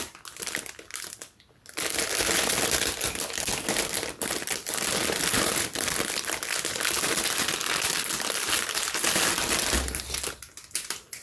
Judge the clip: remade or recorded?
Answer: recorded